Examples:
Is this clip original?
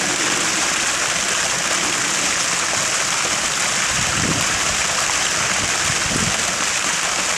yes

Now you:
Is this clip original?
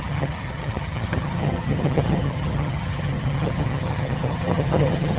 no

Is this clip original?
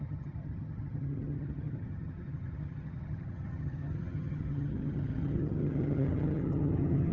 no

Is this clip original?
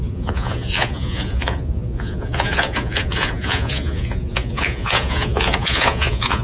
no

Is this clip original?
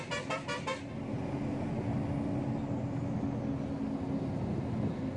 yes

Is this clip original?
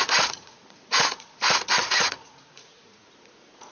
no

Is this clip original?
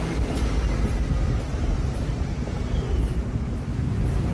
no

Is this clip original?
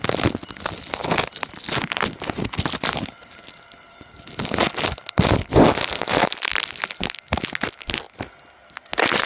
yes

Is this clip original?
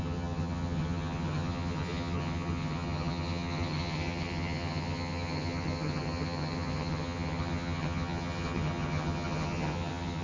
no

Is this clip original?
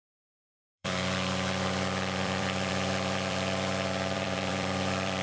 no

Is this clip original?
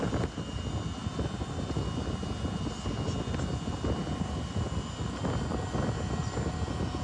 yes